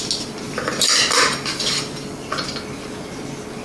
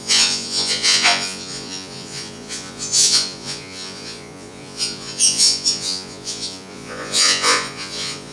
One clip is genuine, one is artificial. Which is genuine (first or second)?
first